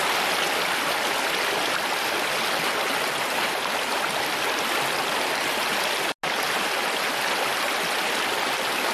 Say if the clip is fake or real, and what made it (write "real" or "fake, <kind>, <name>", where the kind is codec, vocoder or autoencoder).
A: real